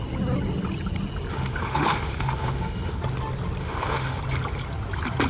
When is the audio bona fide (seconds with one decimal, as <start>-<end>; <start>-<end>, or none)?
0.0-1.3; 3.0-3.6; 4.2-5.3

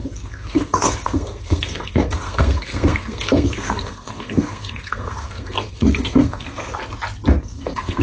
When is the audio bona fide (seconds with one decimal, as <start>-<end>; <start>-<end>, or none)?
6.7-7.4

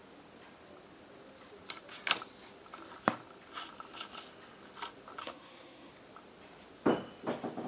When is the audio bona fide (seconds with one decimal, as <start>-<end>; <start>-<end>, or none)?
0.0-5.2; 5.9-7.7

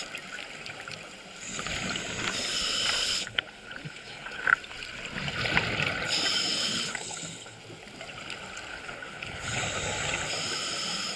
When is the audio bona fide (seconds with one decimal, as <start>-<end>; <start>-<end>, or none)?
0.0-3.0; 4.4-6.7; 7.6-8.7; 9.6-11.2

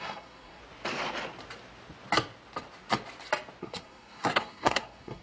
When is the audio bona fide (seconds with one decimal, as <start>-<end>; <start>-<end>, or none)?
0.6-3.6

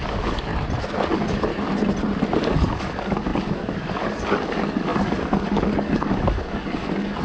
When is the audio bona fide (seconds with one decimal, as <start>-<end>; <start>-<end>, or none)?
0.5-1.1; 1.5-2.4

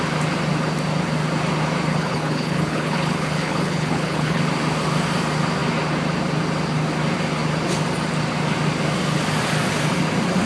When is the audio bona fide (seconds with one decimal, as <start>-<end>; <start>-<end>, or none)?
0.0-1.9; 4.4-10.5

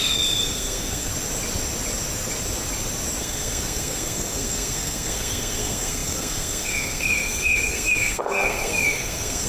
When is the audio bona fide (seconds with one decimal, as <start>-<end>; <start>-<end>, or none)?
1.1-3.2